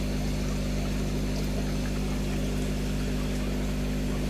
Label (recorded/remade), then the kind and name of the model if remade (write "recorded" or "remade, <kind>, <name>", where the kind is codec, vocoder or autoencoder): recorded